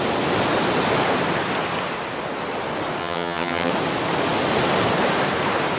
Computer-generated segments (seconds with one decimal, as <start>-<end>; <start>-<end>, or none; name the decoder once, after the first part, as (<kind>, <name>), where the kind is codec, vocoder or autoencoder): 3.0-3.7 (vocoder, HiFi-GAN)